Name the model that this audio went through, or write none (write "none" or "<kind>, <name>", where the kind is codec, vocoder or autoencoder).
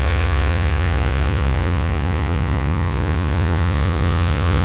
vocoder, Vocos